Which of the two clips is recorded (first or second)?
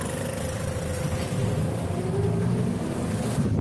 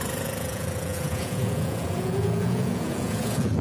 first